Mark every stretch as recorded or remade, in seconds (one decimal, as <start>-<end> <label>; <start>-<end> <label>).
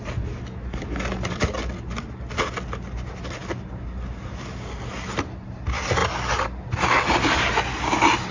0.0-8.3 recorded